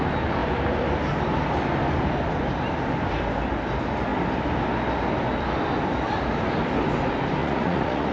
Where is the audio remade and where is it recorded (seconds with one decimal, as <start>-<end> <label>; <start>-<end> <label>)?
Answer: 0.0-7.4 recorded; 7.4-8.1 remade